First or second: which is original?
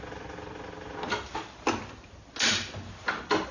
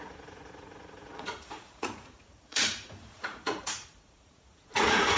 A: first